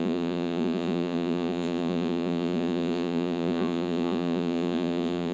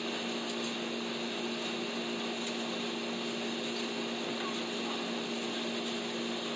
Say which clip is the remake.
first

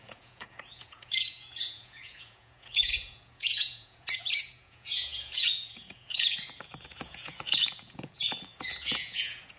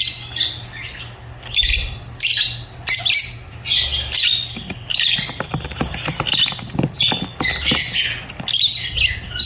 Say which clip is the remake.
first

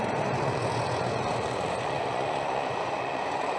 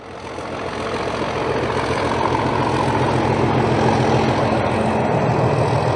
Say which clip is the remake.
first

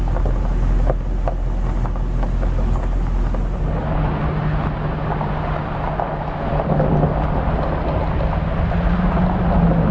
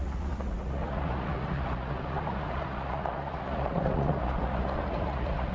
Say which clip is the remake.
second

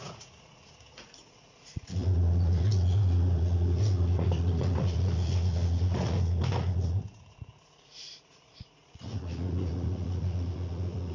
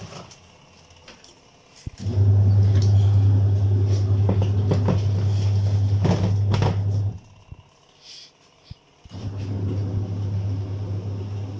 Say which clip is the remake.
first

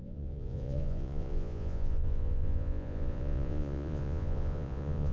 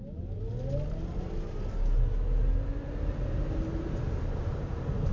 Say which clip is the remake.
first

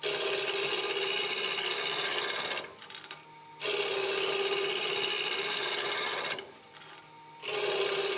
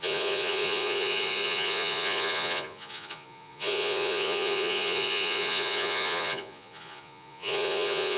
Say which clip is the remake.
second